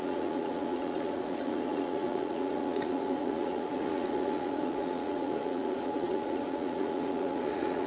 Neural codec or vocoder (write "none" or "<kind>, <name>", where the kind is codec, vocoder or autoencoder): vocoder, Vocos